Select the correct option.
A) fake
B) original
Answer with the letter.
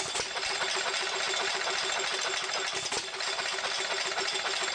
B